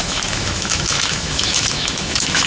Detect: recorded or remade remade